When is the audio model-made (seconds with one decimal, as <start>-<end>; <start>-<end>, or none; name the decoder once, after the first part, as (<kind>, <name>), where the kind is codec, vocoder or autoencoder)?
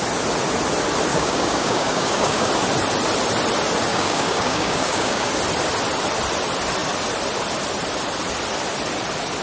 1.1-2.5 (codec, DAC); 3.9-5.3